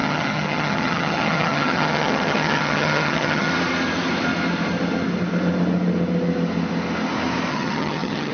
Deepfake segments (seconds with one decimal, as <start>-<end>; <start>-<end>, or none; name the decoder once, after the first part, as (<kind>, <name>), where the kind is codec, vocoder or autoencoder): 0.0-3.5 (vocoder, HiFi-GAN); 7.5-8.3